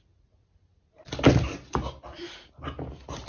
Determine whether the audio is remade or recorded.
recorded